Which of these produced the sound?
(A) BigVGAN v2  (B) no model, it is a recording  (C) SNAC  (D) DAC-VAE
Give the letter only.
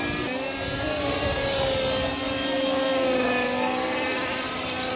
B